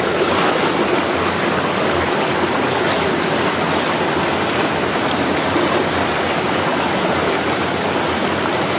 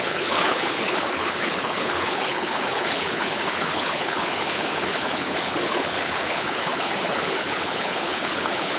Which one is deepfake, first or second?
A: second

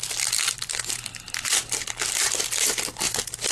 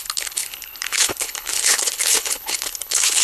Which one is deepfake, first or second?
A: second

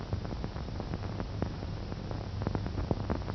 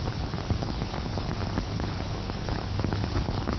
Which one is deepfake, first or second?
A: second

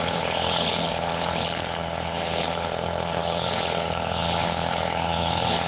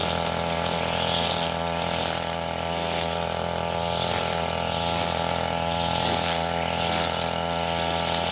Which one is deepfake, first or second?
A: first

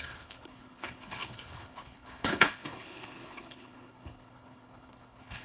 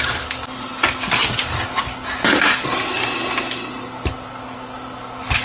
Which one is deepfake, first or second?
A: first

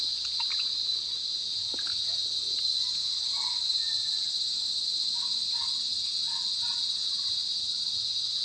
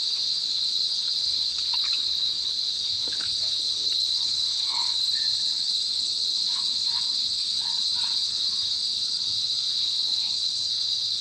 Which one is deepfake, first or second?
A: second